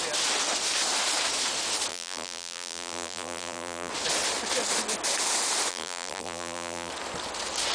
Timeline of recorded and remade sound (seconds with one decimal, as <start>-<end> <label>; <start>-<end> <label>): 0.0-1.9 recorded; 1.9-3.9 remade; 3.9-5.7 recorded; 5.7-6.9 remade; 6.9-7.7 recorded